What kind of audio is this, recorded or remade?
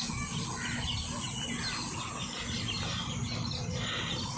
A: recorded